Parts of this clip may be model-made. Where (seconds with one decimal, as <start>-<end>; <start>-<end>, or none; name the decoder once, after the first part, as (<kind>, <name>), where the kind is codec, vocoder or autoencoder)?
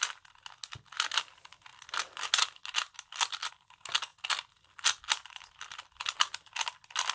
none